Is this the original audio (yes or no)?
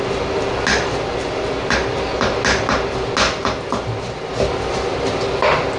yes